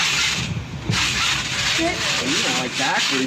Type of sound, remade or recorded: recorded